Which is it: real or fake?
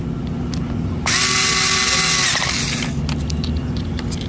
real